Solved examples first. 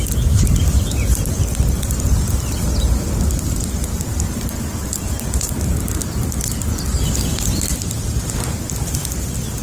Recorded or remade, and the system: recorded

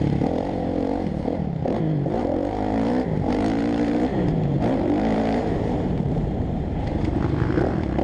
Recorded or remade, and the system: remade, vocoder, BigVGAN v2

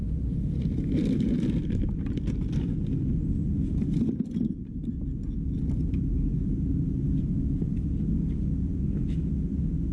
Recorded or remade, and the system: recorded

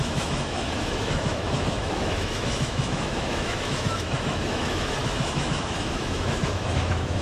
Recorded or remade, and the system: remade, autoencoder, DAC-VAE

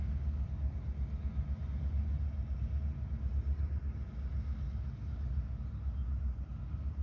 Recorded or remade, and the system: recorded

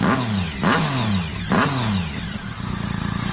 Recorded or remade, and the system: recorded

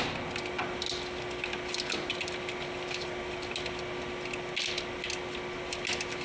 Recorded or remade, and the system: recorded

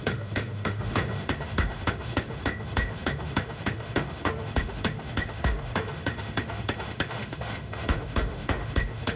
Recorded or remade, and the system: remade, autoencoder, DAC-VAE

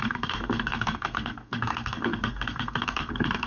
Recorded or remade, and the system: remade, codec, SNAC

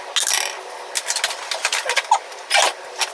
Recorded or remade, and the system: recorded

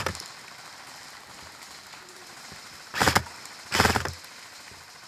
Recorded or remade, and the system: recorded